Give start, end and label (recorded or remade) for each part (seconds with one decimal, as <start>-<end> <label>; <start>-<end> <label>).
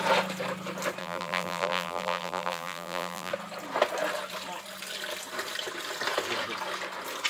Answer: 0.0-1.0 recorded; 1.0-3.3 remade; 3.3-7.3 recorded